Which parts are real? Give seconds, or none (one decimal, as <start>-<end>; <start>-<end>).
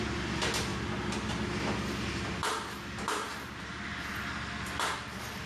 0.0-2.4; 3.8-5.5